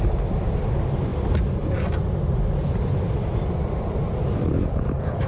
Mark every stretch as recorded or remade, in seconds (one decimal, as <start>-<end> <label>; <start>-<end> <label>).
0.0-5.3 recorded